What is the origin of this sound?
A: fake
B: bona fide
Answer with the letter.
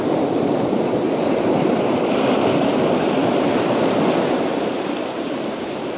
A